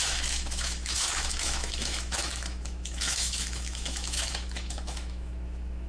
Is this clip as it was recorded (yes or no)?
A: no